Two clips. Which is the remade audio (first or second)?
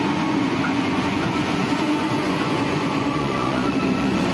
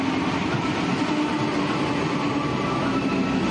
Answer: first